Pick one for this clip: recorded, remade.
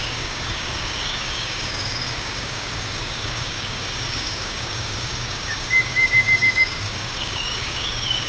remade